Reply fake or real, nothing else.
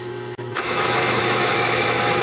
fake